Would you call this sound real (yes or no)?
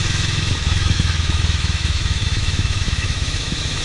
no